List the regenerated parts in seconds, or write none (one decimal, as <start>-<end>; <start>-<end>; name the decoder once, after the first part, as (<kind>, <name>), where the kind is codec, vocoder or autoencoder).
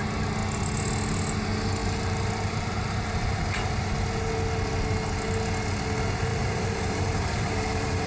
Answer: 1.8-2.7 (vocoder, BigVGAN v2); 6.3-8.1